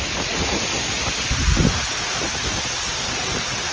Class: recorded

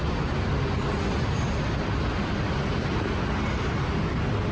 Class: recorded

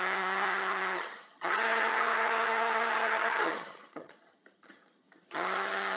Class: remade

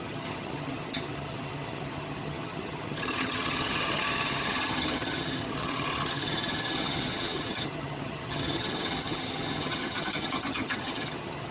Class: remade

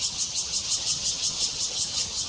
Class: remade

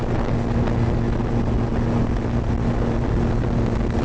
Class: recorded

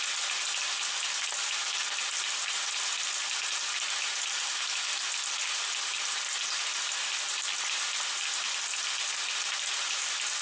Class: recorded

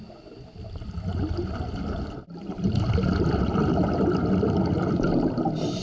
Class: recorded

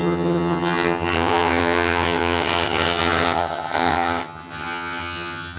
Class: remade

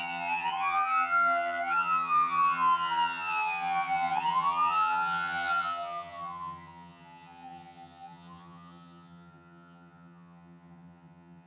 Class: remade